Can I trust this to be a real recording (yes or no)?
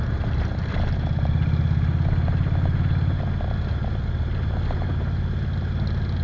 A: yes